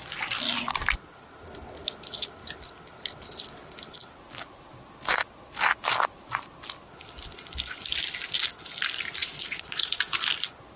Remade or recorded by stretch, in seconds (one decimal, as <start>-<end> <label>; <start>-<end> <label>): 0.0-9.2 recorded; 9.2-10.0 remade; 10.0-10.8 recorded